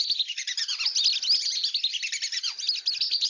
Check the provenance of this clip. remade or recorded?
recorded